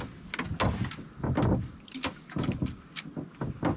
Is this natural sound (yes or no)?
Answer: yes